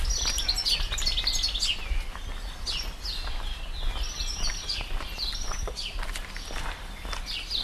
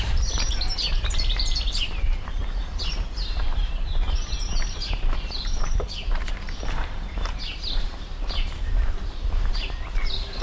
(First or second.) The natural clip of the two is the first